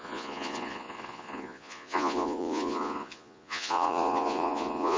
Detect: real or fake fake